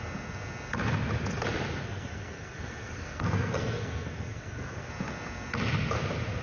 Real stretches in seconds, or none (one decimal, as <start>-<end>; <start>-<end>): 0.0-1.8; 4.9-6.4